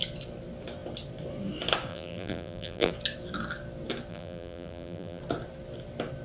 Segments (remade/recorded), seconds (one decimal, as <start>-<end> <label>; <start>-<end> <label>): 0.0-1.9 recorded; 1.9-2.9 remade; 2.9-4.1 recorded; 4.1-5.2 remade; 5.2-6.2 recorded